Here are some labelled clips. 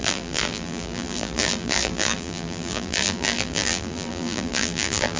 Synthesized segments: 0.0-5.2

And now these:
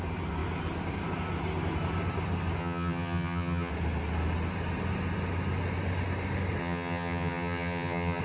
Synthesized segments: 2.6-3.7; 6.6-8.2

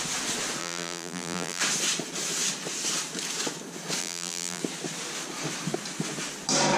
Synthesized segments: 0.6-1.6; 4.0-4.6

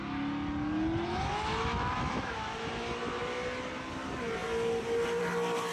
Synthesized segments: 1.1-2.7